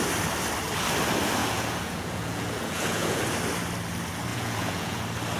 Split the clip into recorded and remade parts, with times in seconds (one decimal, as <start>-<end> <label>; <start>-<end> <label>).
0.0-1.4 recorded; 1.4-3.2 remade; 3.2-4.3 recorded; 4.3-5.0 remade; 5.0-5.4 recorded